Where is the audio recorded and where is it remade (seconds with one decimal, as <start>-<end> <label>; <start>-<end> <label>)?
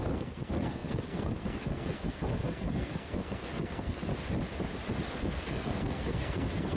0.0-4.1 remade; 4.1-5.1 recorded; 5.1-6.8 remade